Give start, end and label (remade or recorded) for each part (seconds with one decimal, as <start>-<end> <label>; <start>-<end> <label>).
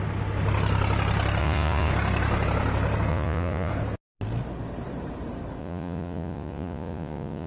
0.0-1.4 recorded; 1.4-1.9 remade; 1.9-3.1 recorded; 3.1-3.7 remade; 3.7-5.6 recorded; 5.6-7.5 remade